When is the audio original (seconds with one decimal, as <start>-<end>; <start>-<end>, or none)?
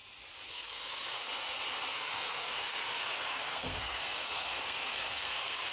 0.0-0.5; 1.3-1.9